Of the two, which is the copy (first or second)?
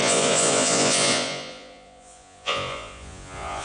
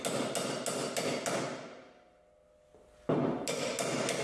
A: first